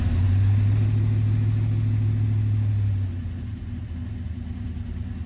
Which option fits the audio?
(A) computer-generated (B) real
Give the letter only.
B